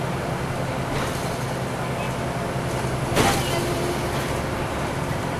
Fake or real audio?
real